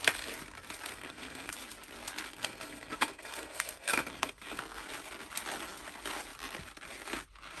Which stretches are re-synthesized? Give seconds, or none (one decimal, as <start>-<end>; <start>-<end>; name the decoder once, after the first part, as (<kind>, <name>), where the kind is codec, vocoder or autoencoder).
0.9-1.5 (codec, SNAC); 2.3-4.6